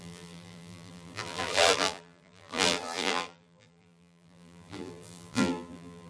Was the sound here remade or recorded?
remade